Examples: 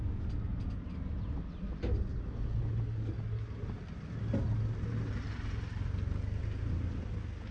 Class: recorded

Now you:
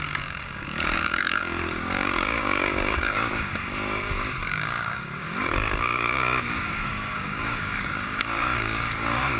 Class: remade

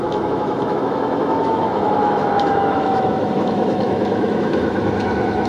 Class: remade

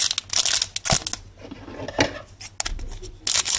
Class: recorded